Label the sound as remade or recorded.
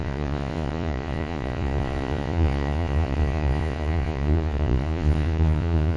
remade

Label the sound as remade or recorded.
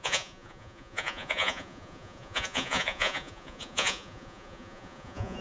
remade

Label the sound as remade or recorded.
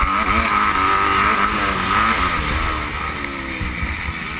recorded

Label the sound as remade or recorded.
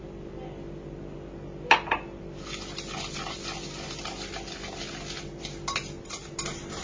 recorded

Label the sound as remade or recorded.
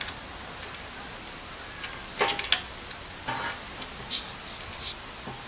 recorded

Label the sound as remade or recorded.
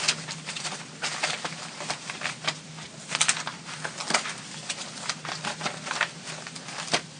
recorded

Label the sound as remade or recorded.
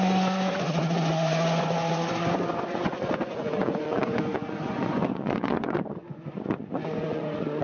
remade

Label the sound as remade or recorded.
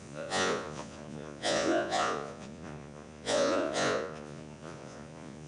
remade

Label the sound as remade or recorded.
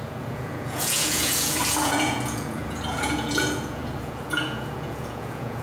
remade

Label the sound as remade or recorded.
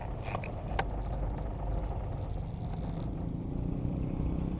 recorded